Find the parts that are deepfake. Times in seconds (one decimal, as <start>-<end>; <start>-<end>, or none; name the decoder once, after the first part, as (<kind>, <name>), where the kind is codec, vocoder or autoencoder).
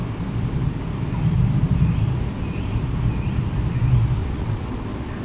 4.2-4.8 (vocoder, WaveNeXt)